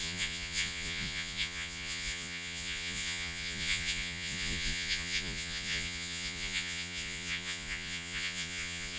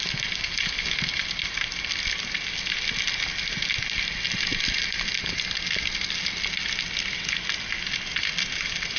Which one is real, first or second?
second